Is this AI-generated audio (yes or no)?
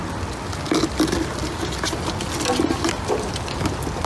no